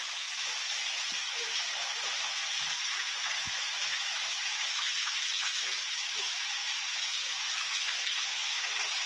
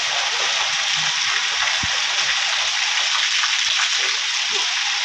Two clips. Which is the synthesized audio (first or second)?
first